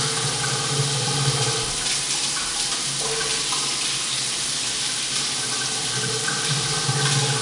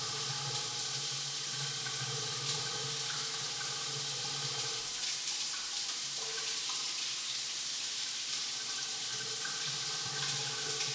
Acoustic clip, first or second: first